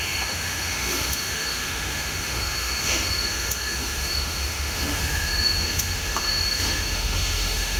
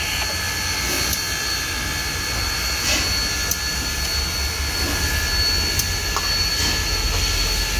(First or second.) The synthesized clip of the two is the first